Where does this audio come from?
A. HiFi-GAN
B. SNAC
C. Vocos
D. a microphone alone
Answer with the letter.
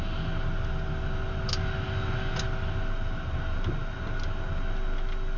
D